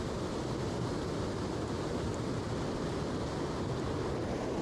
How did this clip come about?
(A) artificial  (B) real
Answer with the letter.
B